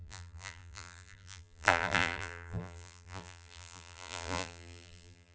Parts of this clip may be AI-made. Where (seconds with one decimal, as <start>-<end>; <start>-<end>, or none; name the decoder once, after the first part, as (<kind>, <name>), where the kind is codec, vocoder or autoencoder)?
0.0-5.3 (vocoder, BigVGAN v2)